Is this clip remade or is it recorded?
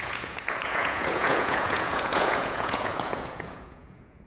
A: remade